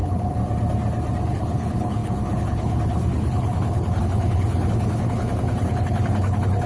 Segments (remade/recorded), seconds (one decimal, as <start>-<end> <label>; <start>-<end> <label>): 0.0-0.4 remade; 0.4-1.3 recorded; 1.3-6.7 remade